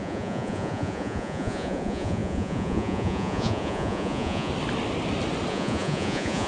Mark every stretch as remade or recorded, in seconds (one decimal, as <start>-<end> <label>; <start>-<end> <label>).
0.0-4.5 remade; 4.5-5.5 recorded; 5.5-6.5 remade